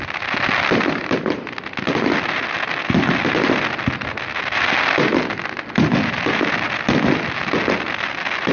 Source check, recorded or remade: recorded